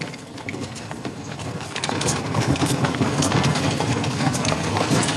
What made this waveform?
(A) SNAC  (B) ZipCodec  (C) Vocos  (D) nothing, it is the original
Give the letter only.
A